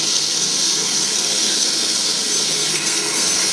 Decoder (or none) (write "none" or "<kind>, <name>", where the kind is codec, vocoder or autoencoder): codec, SNAC